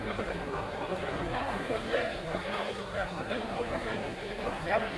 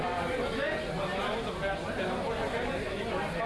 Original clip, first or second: second